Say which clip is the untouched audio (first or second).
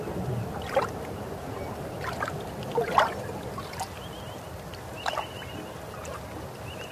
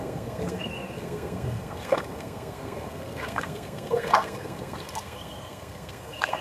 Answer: first